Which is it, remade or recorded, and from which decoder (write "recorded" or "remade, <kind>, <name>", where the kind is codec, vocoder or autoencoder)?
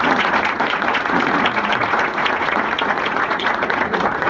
remade, vocoder, Vocos